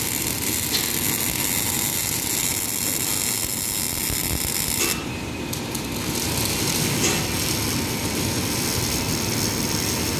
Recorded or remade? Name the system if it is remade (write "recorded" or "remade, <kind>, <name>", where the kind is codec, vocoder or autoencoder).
recorded